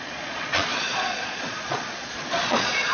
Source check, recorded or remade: remade